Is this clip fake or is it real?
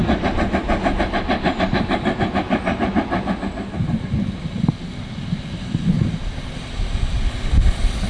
real